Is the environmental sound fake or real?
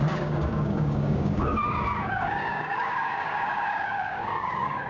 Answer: fake